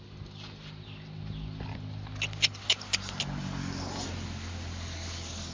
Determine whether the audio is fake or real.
real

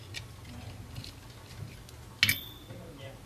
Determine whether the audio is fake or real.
real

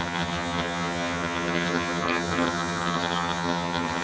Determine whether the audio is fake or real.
fake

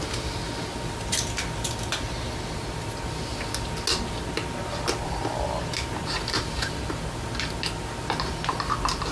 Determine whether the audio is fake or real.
real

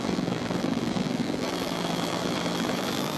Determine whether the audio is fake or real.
fake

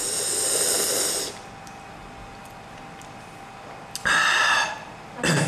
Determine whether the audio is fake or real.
real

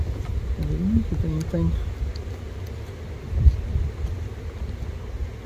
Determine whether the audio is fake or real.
real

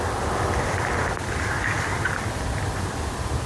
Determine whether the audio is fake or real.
real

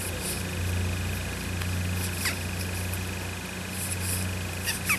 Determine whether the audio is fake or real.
real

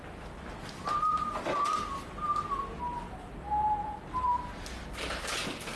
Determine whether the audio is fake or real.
real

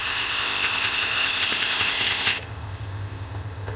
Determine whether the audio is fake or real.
fake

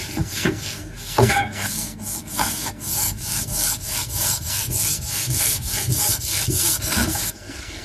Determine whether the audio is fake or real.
fake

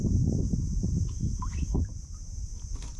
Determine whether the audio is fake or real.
real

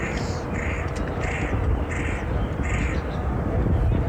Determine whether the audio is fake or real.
real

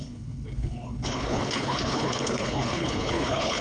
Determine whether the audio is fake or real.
fake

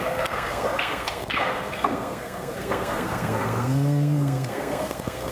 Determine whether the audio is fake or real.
fake